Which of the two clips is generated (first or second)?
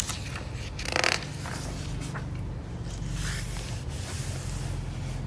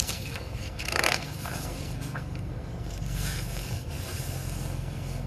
second